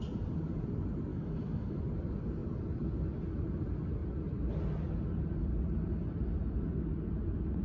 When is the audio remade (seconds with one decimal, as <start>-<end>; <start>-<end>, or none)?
1.1-1.8